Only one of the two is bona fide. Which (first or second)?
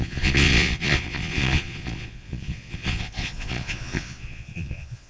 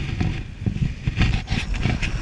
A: second